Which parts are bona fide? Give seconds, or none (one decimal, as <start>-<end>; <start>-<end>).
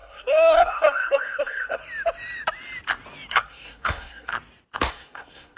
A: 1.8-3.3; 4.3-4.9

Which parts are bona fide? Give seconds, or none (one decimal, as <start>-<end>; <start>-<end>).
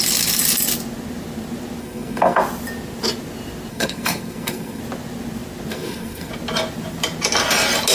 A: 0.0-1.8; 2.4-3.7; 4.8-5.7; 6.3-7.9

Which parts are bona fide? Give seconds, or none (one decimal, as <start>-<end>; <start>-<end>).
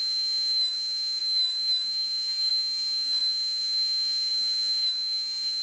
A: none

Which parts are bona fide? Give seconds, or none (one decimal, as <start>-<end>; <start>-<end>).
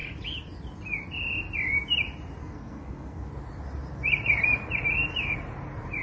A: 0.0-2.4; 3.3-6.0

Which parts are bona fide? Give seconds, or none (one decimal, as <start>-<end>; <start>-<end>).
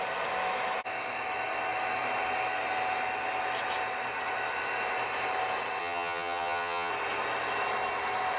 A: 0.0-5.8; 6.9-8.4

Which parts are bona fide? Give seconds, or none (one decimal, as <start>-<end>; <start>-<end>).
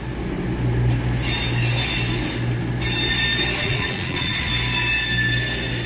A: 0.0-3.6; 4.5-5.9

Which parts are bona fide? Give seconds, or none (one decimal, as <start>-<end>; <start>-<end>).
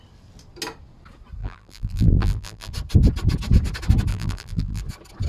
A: 0.0-1.4; 2.7-4.1; 4.8-5.3